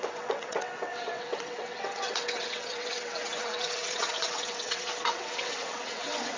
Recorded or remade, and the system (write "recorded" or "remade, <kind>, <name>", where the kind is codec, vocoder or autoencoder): remade, vocoder, WaveNeXt